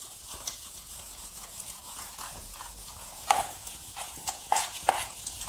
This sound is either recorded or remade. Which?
remade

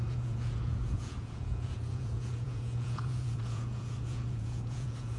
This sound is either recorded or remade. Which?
remade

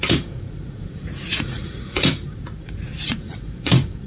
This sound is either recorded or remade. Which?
remade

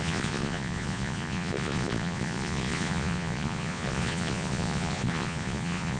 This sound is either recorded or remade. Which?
remade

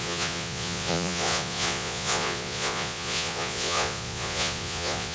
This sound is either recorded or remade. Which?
remade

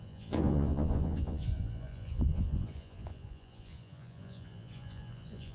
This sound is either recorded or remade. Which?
remade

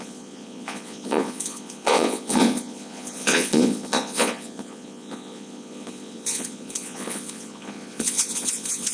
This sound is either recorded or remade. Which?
remade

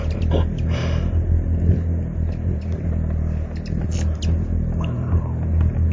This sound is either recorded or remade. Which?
recorded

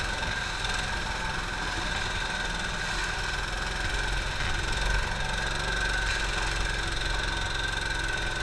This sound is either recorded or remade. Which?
recorded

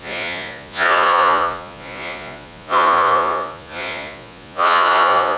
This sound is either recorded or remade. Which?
remade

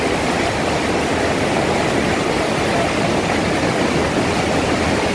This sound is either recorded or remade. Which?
recorded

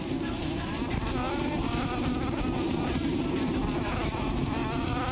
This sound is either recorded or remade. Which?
recorded